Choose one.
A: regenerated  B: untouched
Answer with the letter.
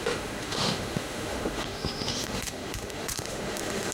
A